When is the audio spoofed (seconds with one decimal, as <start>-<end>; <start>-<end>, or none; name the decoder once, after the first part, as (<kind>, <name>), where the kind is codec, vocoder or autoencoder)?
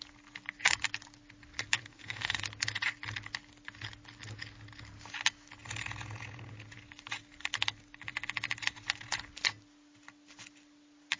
1.9-2.4 (autoencoder, DAC-VAE)